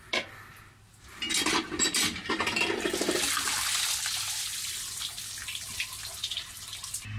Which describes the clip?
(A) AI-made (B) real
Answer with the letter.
B